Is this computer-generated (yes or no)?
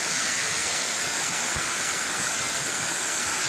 yes